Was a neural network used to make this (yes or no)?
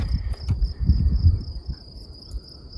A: no